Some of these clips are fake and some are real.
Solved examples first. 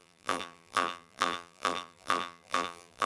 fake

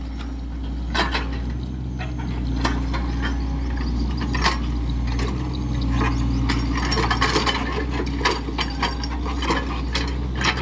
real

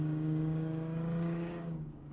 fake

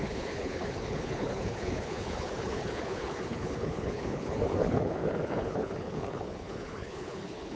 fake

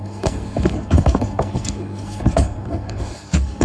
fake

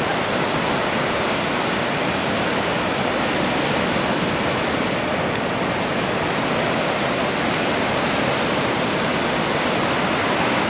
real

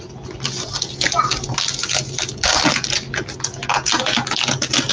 real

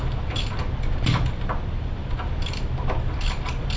real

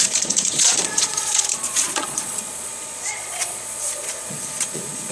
fake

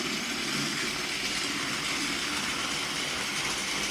real